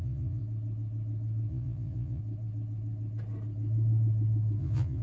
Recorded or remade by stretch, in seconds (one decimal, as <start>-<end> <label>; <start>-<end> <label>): 0.0-0.4 remade; 0.4-1.5 recorded; 1.5-2.2 remade; 2.2-4.6 recorded; 4.6-5.0 remade